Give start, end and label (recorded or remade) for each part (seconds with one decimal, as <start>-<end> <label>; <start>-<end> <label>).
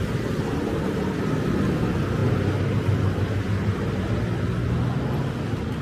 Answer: 0.0-5.8 recorded